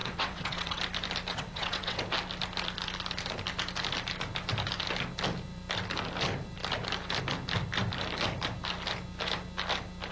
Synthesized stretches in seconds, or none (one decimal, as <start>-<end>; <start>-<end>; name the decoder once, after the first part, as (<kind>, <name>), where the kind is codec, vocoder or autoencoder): 0.0-0.8 (vocoder, WaveNeXt); 1.3-2.0

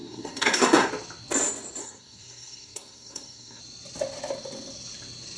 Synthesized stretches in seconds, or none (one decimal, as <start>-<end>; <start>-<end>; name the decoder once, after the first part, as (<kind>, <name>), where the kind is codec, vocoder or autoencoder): 0.0-0.9 (codec, SNAC); 1.8-3.6

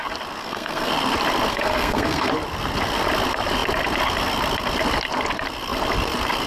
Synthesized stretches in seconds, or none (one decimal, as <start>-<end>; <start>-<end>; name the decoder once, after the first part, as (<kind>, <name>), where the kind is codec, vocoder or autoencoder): 0.4-0.9 (codec, SNAC); 1.5-2.3

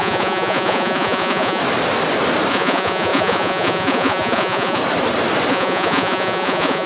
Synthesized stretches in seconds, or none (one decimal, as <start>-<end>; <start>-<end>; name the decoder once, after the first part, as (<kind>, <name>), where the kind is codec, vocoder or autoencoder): 0.0-1.6 (vocoder, Vocos); 2.5-4.8; 5.5-6.9

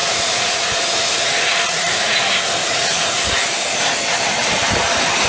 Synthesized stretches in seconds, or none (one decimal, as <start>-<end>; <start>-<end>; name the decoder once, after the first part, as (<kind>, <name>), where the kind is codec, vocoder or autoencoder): 0.0-2.2 (vocoder, Vocos); 2.6-3.2

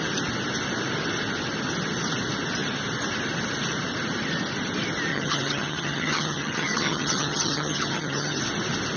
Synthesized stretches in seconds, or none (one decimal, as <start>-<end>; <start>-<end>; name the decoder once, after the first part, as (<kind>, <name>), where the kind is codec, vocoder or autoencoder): 5.1-8.4 (vocoder, HiFi-GAN)

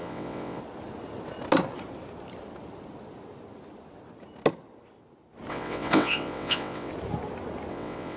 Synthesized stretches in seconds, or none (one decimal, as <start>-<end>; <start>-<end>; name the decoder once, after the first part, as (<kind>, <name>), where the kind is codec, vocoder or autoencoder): 0.0-0.6 (vocoder, WaveNeXt); 5.5-6.9; 7.7-8.2